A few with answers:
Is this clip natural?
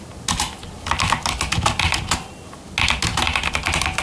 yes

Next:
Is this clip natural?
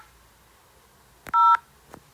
yes